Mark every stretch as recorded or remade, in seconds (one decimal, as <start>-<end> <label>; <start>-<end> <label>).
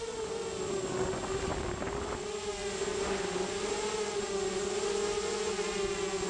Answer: 0.0-6.3 recorded